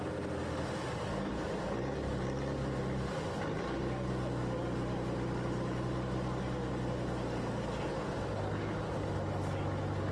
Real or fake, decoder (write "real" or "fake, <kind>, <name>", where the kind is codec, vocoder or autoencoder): real